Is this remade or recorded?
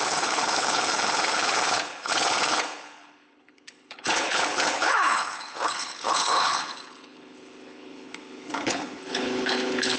remade